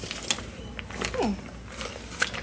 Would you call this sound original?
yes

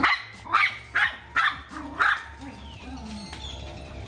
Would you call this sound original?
yes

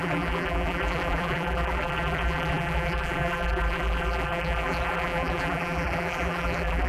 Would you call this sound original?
no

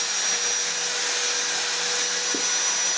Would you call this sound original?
yes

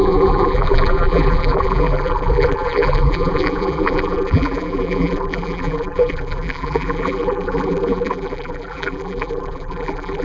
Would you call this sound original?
no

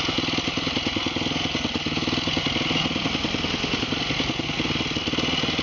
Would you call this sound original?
yes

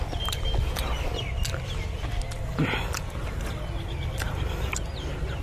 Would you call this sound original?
yes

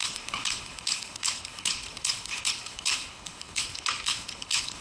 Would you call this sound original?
no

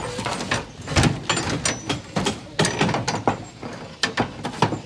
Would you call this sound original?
yes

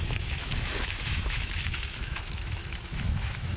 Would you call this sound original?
no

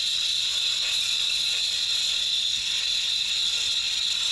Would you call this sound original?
yes